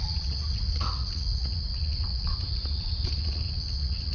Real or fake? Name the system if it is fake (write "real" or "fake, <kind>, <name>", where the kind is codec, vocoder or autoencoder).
fake, vocoder, Vocos